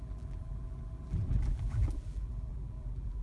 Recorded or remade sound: remade